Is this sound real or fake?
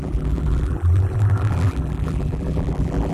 fake